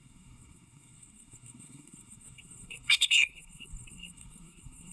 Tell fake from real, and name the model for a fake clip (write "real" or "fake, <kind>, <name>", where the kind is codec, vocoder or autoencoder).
fake, codec, SNAC